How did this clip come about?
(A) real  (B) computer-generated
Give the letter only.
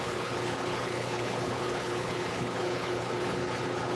B